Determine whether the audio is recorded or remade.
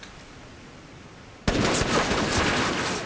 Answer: recorded